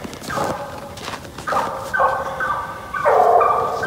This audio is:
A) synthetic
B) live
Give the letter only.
B